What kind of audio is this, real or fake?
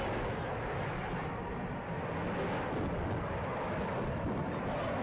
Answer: real